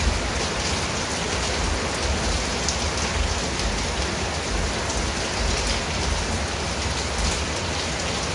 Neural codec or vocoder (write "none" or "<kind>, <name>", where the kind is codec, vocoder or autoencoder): none